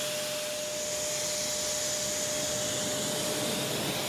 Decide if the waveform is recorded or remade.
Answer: recorded